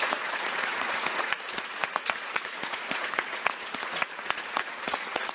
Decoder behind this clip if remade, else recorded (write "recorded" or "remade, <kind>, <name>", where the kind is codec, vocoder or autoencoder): remade, vocoder, Vocos